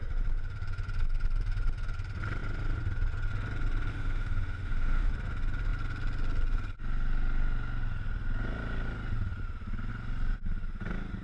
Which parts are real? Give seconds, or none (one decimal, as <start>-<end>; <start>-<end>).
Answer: 0.0-3.9; 5.1-11.2